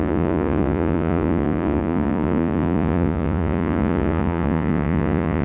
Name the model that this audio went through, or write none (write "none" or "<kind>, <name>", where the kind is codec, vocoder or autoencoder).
vocoder, Vocos